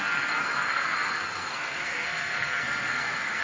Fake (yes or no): yes